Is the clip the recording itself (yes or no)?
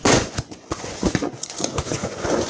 no